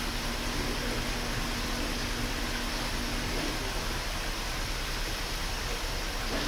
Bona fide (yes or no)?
yes